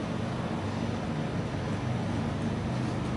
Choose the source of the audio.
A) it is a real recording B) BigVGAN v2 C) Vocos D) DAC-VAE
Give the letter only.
A